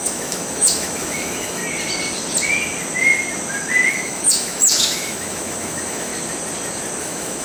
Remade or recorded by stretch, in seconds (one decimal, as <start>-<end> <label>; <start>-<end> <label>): 0.0-1.6 remade; 1.6-3.9 recorded; 3.9-6.1 remade; 6.1-7.0 recorded; 7.0-7.4 remade